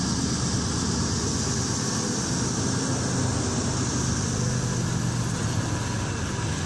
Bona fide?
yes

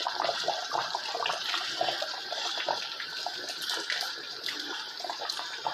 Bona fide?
no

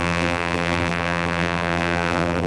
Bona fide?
no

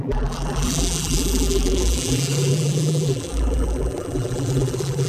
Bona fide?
no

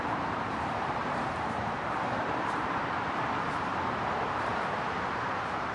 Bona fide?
no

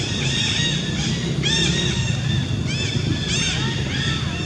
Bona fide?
yes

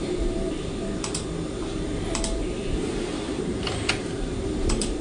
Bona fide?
no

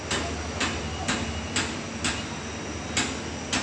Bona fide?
yes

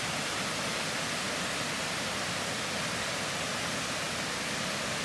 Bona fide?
yes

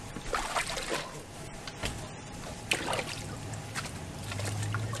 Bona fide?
yes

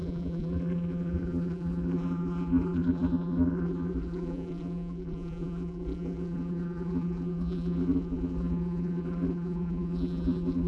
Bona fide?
no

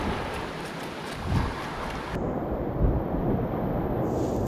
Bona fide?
yes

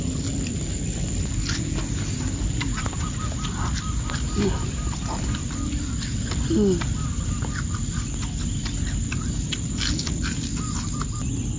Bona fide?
yes